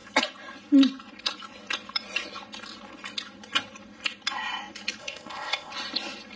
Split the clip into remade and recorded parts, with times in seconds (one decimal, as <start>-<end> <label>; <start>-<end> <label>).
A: 0.0-5.0 recorded; 5.0-5.7 remade; 5.7-6.4 recorded